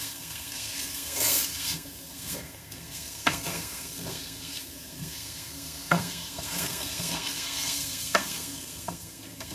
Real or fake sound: fake